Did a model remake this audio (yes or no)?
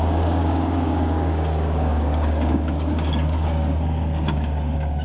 yes